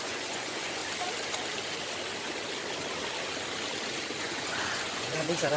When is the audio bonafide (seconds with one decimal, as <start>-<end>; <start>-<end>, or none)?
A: 0.8-4.2